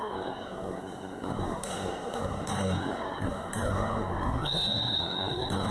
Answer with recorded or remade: remade